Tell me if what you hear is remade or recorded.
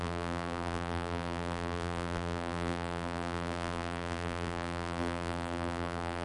remade